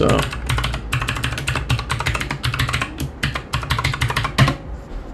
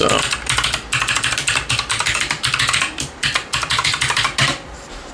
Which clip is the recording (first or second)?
first